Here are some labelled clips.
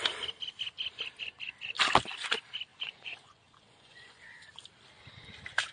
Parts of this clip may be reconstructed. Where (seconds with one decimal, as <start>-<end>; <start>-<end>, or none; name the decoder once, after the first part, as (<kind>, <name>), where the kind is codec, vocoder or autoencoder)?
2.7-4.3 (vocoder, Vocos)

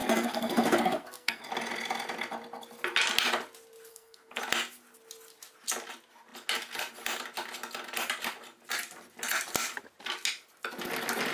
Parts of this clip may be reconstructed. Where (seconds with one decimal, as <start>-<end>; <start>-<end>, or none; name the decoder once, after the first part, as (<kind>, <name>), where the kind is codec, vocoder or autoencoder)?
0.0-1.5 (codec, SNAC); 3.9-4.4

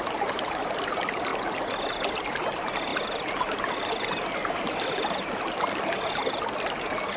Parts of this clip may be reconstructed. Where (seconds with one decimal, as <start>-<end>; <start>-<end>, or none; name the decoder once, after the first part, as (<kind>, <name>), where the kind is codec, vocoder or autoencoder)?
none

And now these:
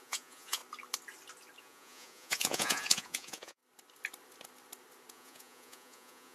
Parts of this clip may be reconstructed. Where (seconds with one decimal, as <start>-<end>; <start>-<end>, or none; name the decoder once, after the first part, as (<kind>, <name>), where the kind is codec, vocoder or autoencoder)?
0.0-0.6 (vocoder, Vocos); 1.6-3.6; 5.1-6.3

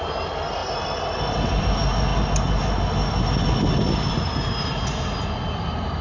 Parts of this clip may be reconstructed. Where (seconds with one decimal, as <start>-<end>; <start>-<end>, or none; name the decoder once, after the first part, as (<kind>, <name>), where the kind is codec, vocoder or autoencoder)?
none

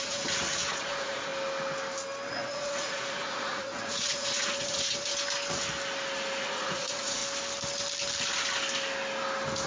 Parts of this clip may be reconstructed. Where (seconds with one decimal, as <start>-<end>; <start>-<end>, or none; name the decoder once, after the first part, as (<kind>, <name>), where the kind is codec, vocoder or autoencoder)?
0.0-1.3 (vocoder, Vocos); 2.3-5.1; 6.4-7.2

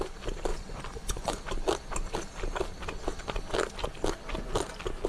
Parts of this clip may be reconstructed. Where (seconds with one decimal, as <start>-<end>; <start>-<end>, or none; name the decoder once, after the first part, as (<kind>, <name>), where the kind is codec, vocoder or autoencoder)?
0.5-1.4 (vocoder, Vocos)

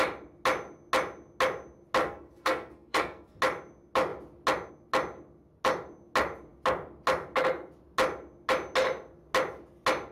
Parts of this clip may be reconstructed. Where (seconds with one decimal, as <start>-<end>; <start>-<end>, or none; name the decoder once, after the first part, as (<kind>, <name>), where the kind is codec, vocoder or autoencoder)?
2.0-3.4 (codec, SNAC)